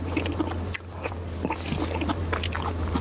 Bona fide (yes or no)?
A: yes